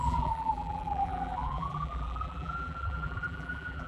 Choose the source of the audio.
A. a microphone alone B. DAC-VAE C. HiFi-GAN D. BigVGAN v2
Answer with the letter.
D